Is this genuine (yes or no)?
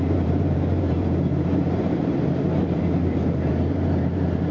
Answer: no